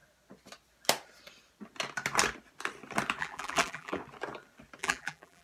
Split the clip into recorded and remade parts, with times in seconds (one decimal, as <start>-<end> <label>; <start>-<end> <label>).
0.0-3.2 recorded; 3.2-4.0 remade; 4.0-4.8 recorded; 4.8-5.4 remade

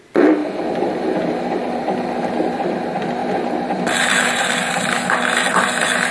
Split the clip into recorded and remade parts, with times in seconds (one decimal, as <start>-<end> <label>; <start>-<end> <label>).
0.0-0.4 recorded; 0.4-0.9 remade; 0.9-1.6 recorded; 1.6-2.5 remade; 2.5-3.2 recorded; 3.2-4.8 remade; 4.8-6.1 recorded

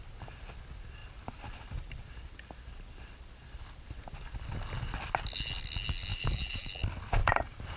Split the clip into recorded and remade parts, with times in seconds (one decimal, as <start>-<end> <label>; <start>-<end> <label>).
0.0-6.1 recorded; 6.1-6.7 remade; 6.7-7.2 recorded; 7.2-7.8 remade